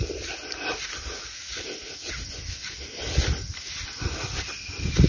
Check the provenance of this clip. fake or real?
real